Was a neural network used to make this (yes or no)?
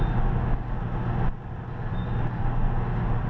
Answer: no